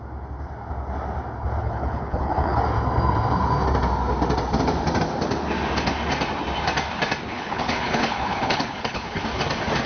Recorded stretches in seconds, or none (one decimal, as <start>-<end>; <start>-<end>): 0.0-1.6; 2.6-7.3; 9.2-9.9